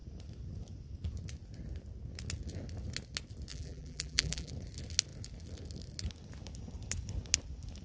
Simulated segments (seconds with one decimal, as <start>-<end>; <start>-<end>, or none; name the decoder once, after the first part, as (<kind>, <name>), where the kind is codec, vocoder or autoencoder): 3.5-4.5 (vocoder, BigVGAN v2)